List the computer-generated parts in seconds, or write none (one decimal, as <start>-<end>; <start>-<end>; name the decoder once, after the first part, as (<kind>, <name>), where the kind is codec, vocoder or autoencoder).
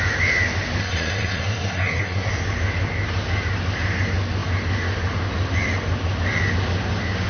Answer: 0.8-2.3 (codec, SNAC)